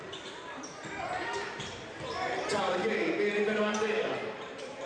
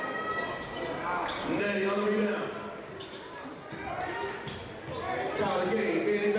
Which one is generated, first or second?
first